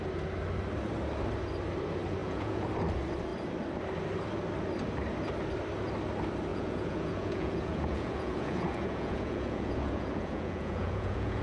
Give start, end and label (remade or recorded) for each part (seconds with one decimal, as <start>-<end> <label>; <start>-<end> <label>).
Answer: 0.0-2.2 recorded; 2.2-2.7 remade; 2.7-6.5 recorded; 6.5-11.4 remade